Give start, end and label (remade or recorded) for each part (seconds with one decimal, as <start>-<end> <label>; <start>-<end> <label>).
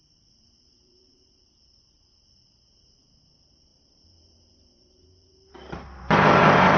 0.0-6.8 remade